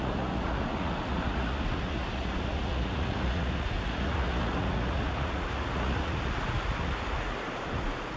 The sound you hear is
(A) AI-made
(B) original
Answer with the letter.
A